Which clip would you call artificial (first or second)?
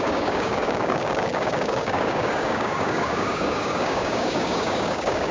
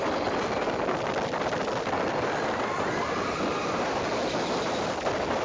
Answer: first